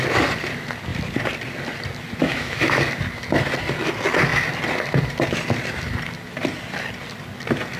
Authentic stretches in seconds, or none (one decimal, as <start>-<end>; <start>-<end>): 0.0-2.2; 2.8-7.8